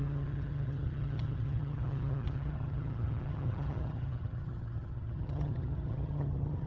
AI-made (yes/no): yes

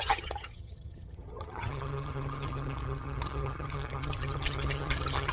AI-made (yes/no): yes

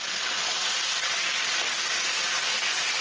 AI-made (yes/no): no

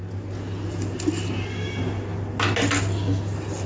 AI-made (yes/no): no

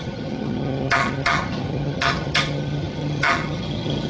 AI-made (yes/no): yes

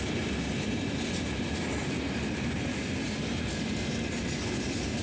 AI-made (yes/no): no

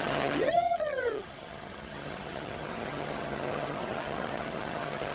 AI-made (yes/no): yes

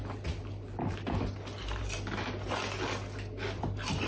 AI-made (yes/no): no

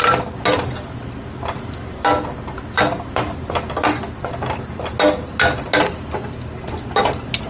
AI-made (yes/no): no